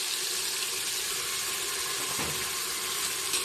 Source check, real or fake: real